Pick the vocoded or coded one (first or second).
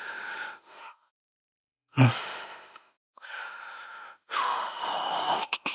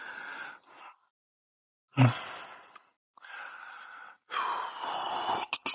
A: first